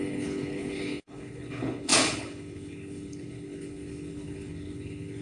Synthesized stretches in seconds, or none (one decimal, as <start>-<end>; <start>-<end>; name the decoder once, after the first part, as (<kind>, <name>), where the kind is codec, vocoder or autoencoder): 0.0-5.2 (codec, HILCodec)